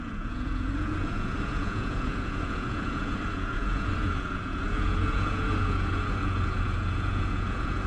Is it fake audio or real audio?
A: fake